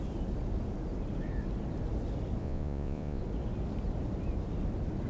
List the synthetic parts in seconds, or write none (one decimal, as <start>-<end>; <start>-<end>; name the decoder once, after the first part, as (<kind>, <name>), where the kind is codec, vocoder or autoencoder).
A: 2.4-3.2 (vocoder, Vocos)